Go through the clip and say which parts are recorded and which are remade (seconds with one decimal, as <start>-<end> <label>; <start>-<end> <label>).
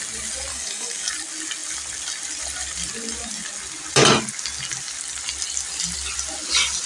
0.0-0.5 recorded; 0.5-1.1 remade; 1.1-6.9 recorded